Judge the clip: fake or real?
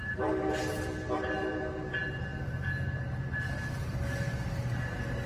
real